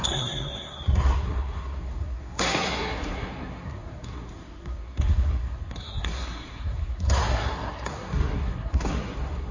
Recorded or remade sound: remade